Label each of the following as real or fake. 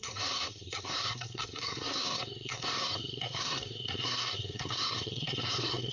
fake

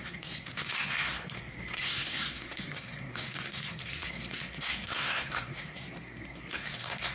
fake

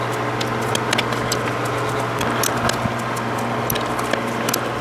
real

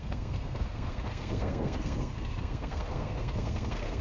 fake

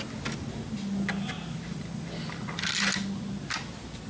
real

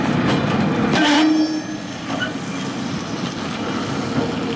real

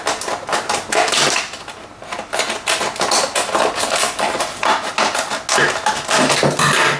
real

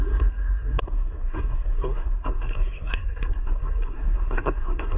fake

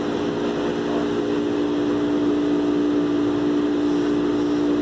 real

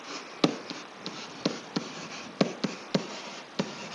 real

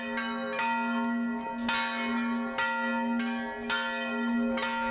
real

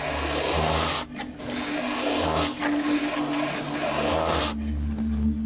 real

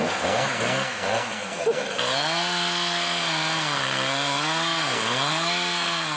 fake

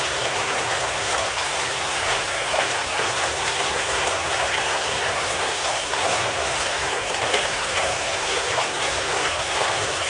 fake